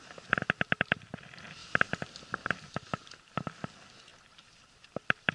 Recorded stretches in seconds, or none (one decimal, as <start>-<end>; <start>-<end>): 0.0-1.6; 2.5-4.1